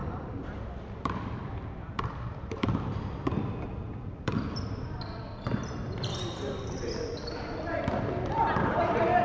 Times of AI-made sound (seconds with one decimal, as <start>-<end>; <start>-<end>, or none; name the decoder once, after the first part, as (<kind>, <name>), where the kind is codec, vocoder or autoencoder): 0.0-9.2 (vocoder, BigVGAN v2)